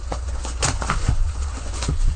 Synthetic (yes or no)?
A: yes